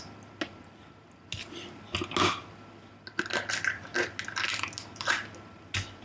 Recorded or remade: recorded